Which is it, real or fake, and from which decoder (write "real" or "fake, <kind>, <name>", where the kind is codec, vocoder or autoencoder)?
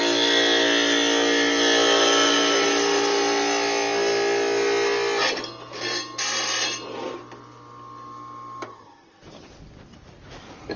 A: real